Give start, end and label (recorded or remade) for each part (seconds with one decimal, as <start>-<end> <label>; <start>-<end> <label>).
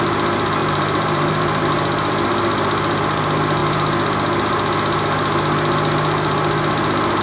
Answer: 0.0-0.6 recorded; 0.6-1.6 remade; 1.6-7.2 recorded